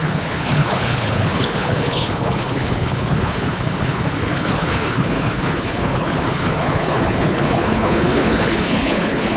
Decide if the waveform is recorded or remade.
remade